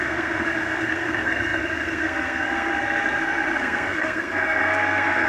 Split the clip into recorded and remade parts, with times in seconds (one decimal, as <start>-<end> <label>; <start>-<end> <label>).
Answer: 0.0-5.3 remade